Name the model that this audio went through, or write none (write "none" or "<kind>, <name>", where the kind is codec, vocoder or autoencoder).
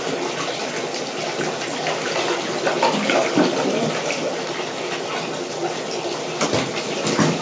none